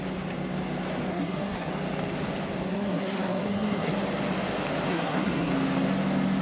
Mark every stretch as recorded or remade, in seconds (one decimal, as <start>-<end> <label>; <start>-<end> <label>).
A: 0.0-1.1 recorded; 1.1-1.7 remade; 1.7-2.7 recorded; 2.7-3.9 remade; 3.9-4.9 recorded; 4.9-5.5 remade; 5.5-6.4 recorded